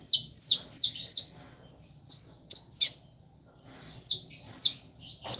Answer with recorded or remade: recorded